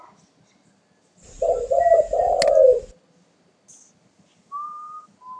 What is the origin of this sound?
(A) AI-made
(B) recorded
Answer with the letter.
B